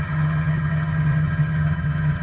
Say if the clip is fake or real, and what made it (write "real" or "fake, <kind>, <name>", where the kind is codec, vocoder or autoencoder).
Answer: fake, vocoder, HiFi-GAN